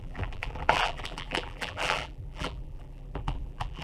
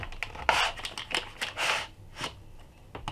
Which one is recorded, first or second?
second